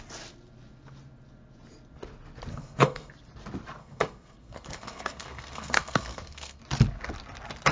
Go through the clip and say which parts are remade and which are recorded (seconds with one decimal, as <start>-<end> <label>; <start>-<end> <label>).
0.0-2.5 recorded; 2.5-3.1 remade; 3.1-3.8 recorded; 3.8-6.6 remade; 6.6-7.7 recorded